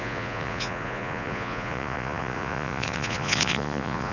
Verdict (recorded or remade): remade